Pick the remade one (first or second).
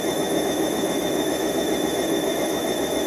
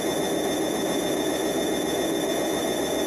first